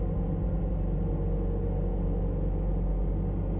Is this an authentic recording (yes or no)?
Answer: yes